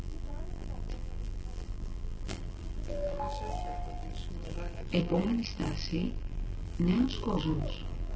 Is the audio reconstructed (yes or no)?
yes